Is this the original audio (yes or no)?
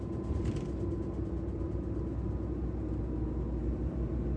yes